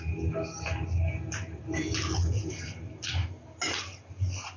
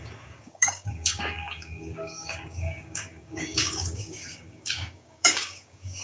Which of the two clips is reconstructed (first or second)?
second